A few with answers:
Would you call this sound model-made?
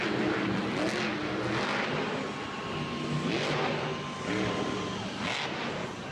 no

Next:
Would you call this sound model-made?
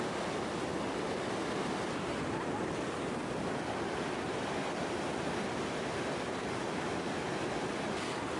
no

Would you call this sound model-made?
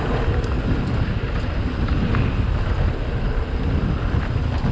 no